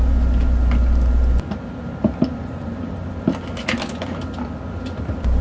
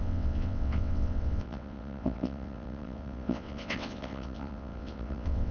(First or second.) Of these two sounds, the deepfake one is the second